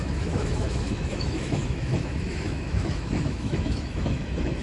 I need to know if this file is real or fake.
fake